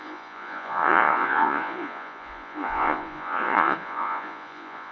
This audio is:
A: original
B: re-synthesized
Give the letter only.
B